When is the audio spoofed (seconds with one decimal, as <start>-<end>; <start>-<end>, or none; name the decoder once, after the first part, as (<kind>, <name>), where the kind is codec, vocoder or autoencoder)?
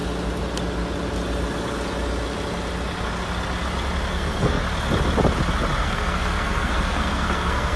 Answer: 4.1-4.6 (codec, SNAC); 5.8-7.8